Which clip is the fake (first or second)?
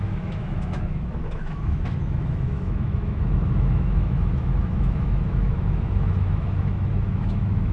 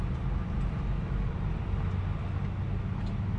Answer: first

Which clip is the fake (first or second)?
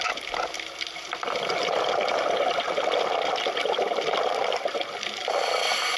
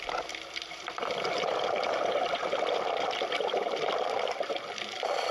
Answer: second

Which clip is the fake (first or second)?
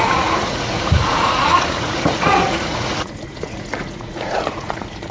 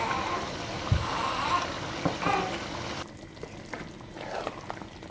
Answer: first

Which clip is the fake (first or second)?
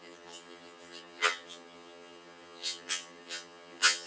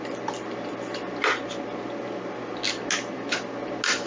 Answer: first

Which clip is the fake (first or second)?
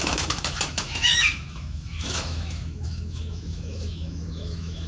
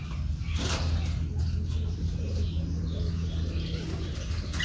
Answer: first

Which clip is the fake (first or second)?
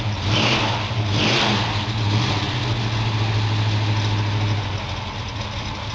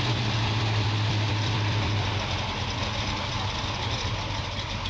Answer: second